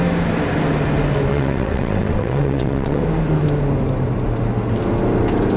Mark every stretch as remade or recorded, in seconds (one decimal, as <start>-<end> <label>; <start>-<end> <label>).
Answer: 0.0-1.3 recorded; 1.3-3.0 remade; 3.0-5.6 recorded